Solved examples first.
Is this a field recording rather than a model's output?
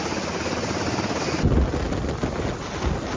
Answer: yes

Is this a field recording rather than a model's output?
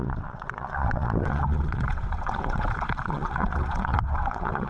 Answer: no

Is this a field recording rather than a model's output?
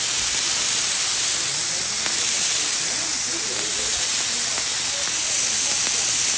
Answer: yes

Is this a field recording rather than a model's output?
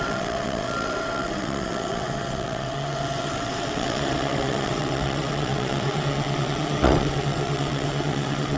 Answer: no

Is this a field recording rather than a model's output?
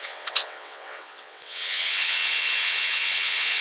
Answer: no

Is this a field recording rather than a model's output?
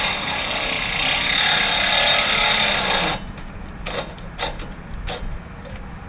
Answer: yes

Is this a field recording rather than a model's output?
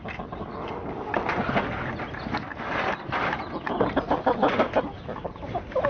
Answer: yes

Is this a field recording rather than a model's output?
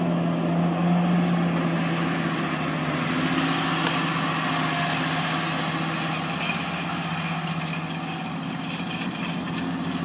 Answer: yes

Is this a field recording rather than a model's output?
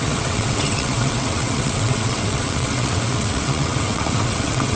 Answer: no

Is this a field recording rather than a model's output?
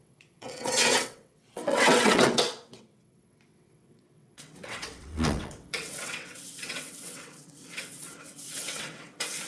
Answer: no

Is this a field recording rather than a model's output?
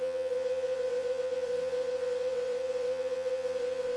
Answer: no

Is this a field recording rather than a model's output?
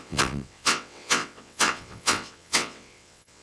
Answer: no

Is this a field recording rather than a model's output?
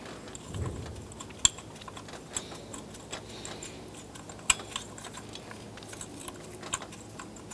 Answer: yes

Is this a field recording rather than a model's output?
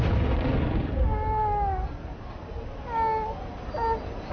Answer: yes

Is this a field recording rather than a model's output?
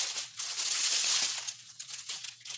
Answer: no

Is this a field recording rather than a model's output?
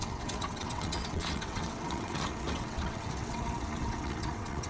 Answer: no